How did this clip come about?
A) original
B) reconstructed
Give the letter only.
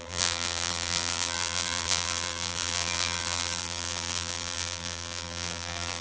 B